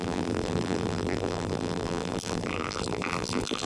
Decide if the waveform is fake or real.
fake